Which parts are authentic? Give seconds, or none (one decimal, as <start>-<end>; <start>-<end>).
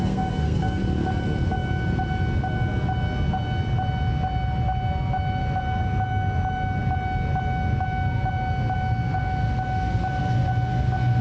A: 0.8-11.2